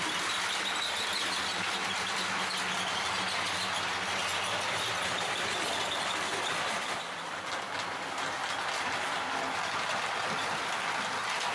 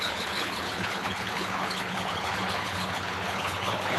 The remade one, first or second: second